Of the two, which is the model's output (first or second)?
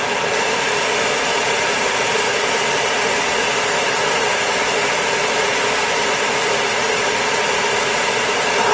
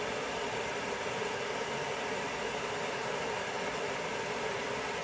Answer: second